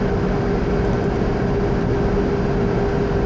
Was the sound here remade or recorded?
recorded